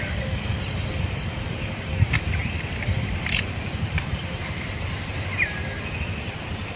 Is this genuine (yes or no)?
yes